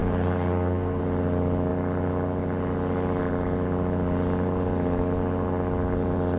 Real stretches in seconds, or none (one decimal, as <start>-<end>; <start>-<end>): 1.0-6.4